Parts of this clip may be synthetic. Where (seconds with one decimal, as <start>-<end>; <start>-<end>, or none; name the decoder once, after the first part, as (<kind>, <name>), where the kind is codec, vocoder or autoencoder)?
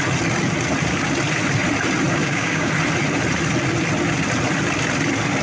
2.2-2.7 (codec, DAC)